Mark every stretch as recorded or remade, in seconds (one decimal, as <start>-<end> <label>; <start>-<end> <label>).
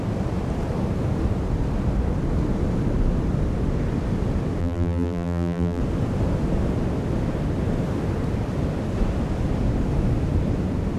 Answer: 0.0-4.6 recorded; 4.6-5.8 remade; 5.8-11.0 recorded